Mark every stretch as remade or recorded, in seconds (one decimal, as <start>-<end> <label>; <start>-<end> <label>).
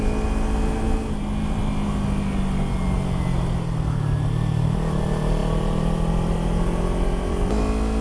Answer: 0.0-8.0 recorded